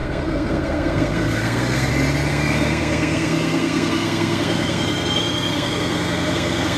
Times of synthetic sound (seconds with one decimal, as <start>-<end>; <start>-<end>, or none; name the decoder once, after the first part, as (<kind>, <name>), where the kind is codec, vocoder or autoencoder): 0.0-1.9 (codec, SNAC); 2.3-6.8